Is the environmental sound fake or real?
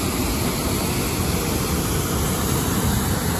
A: real